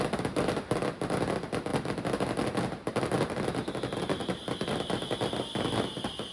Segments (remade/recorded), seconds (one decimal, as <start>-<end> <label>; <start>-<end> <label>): 0.0-6.3 recorded